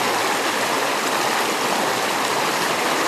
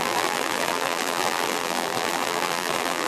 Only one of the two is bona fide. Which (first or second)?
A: first